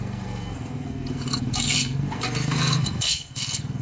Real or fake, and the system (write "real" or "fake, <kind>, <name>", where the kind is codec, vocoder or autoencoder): fake, codec, SNAC